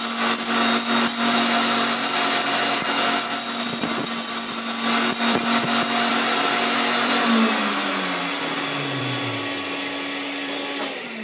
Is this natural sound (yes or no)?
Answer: yes